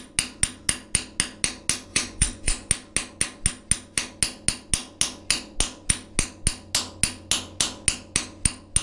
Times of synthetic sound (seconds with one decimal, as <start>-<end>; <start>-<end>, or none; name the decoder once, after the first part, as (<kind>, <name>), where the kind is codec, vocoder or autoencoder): 1.9-2.7 (vocoder, Vocos)